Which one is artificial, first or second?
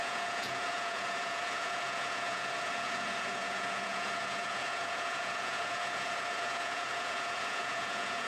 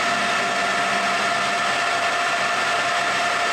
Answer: first